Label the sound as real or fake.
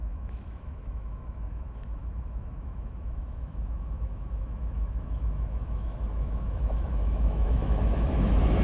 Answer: fake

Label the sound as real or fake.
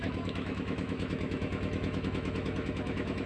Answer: fake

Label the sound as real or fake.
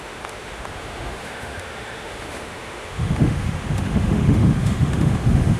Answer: fake